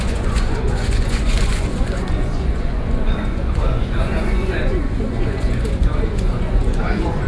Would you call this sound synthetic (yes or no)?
yes